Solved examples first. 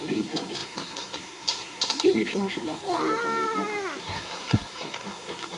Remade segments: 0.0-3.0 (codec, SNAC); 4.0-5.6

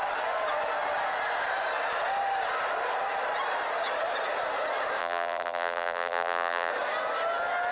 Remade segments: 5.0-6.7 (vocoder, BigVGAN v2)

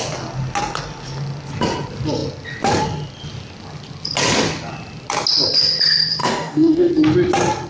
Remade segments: 6.2-6.9 (codec, DAC)

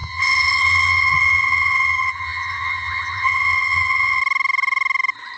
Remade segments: 0.0-4.2 (vocoder, HiFi-GAN)